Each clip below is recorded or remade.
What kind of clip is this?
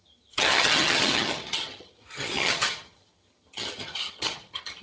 remade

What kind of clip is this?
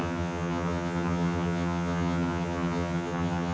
remade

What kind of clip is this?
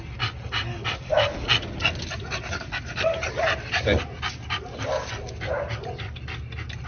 recorded